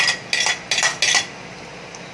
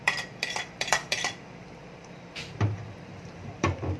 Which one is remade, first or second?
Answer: second